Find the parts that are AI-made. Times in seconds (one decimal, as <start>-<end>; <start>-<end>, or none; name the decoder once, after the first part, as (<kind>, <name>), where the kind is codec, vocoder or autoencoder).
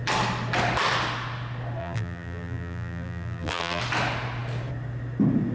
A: 1.8-3.8 (vocoder, BigVGAN v2)